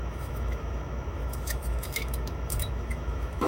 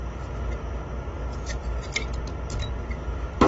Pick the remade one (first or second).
first